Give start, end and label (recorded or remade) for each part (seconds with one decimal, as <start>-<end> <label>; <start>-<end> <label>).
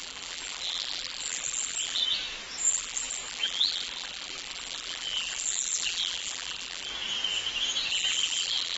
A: 0.0-2.0 remade; 2.0-2.7 recorded; 2.7-6.9 remade; 6.9-7.9 recorded; 7.9-8.8 remade